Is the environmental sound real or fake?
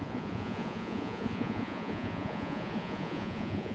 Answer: fake